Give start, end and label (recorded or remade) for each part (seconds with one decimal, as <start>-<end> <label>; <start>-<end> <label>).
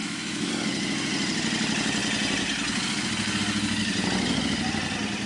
0.0-0.5 remade; 0.5-5.3 recorded